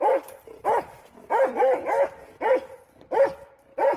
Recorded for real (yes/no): yes